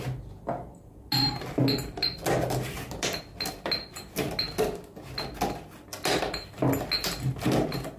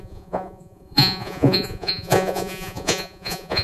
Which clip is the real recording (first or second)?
first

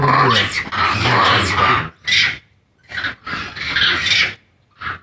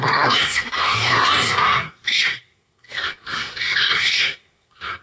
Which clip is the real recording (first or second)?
first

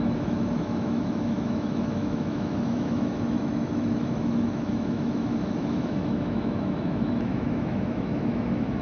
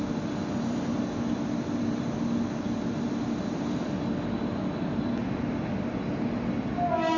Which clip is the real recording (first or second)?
second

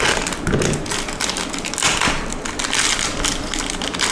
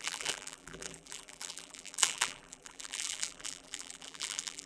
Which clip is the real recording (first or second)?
first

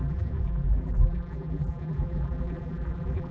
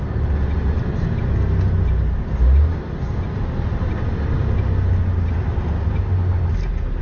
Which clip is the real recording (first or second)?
second